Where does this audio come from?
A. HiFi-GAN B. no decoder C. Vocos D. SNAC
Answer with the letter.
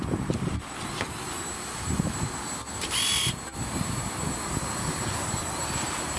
B